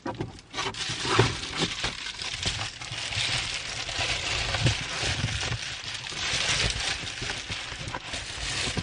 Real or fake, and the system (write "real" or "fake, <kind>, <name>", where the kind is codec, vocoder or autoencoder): real